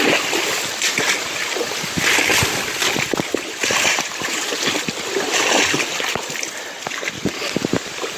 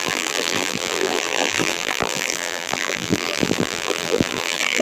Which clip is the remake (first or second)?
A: second